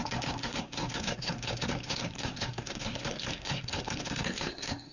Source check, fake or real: fake